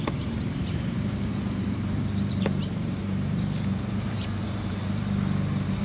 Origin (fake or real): fake